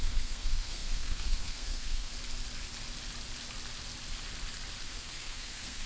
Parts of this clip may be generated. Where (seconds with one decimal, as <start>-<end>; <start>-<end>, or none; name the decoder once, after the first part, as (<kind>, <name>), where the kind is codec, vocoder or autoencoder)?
0.0-2.1 (codec, SNAC); 4.8-5.9